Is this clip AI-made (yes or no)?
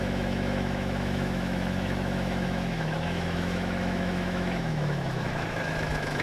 yes